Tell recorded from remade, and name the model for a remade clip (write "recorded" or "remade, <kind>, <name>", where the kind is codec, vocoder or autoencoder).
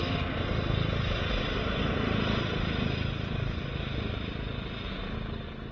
recorded